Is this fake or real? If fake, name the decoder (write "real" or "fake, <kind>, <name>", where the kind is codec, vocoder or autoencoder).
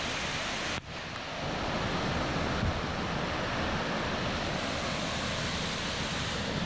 real